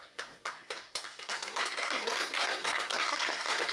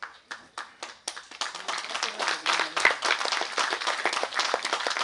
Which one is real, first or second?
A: second